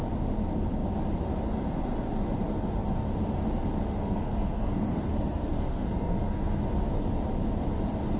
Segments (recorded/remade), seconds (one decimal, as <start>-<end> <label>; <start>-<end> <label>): 0.0-3.9 recorded; 3.9-6.6 remade; 6.6-8.2 recorded